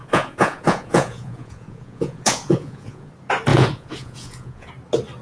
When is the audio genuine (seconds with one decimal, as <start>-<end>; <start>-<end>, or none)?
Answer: 3.1-3.5; 4.7-5.2